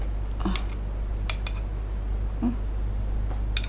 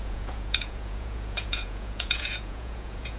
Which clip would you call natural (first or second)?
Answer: first